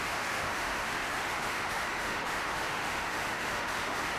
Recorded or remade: remade